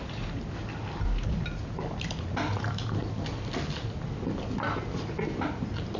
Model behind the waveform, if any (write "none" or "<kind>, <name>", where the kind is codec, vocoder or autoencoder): none